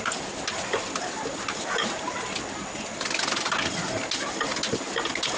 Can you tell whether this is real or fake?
real